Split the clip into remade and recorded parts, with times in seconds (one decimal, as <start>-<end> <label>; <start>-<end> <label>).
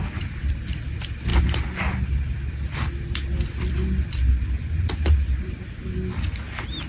0.0-6.9 recorded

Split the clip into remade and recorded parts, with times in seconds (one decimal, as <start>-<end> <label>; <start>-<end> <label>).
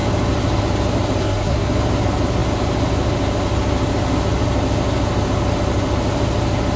0.0-1.2 recorded; 1.2-1.7 remade; 1.7-6.8 recorded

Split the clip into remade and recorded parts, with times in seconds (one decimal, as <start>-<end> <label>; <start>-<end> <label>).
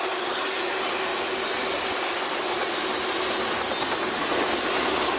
0.0-5.2 recorded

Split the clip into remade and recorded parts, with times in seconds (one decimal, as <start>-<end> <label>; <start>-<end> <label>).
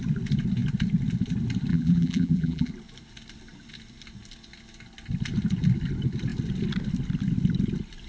0.0-1.7 recorded; 1.7-2.7 remade; 2.7-8.1 recorded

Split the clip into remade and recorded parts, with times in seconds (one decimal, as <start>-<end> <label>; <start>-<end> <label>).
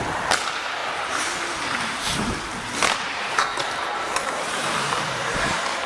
0.0-5.9 remade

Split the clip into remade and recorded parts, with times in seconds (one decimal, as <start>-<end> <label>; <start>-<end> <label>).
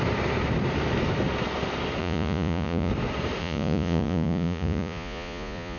0.0-2.0 recorded; 2.0-2.9 remade; 2.9-3.4 recorded; 3.4-5.8 remade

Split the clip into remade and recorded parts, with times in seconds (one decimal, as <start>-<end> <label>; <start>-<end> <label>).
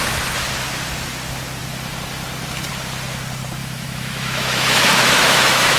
0.0-3.6 recorded; 3.6-5.8 remade